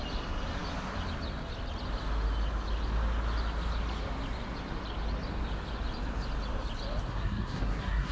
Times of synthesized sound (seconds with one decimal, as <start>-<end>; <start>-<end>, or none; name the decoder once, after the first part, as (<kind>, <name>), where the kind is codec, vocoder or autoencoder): 7.1-8.1 (codec, SNAC)